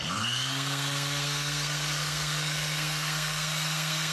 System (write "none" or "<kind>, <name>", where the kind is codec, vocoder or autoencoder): codec, SNAC